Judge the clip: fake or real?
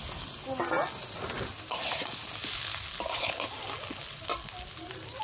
real